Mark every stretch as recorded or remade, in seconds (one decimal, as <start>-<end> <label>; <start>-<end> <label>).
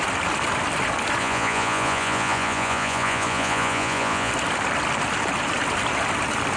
0.0-1.2 recorded; 1.2-4.3 remade; 4.3-6.6 recorded